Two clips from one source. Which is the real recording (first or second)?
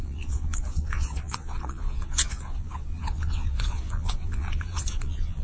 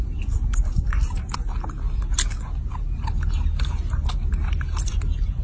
second